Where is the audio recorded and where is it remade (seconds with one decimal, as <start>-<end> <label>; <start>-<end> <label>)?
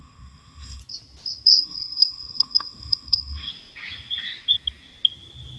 0.0-0.8 remade; 0.8-1.6 recorded; 1.6-3.5 remade; 3.5-5.6 recorded